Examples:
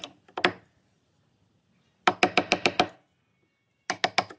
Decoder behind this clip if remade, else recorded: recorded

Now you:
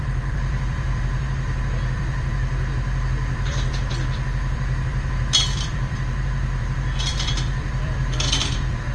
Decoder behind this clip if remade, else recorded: remade, vocoder, BigVGAN v2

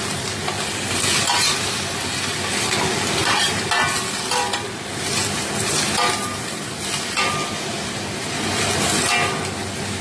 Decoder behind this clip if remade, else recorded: recorded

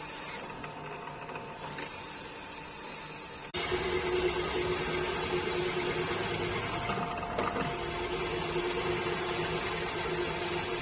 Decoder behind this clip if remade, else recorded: recorded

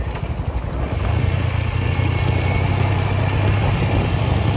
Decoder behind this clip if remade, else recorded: recorded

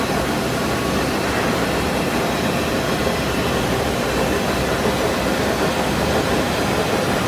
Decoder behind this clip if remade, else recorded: recorded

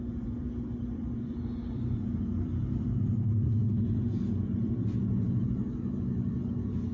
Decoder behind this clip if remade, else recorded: remade, vocoder, BigVGAN v2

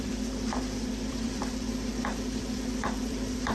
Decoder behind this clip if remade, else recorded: remade, vocoder, BigVGAN v2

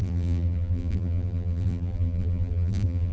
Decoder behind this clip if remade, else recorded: remade, vocoder, BigVGAN v2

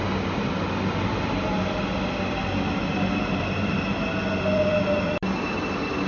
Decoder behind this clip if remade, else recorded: recorded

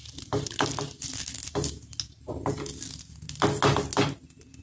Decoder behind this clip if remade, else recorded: recorded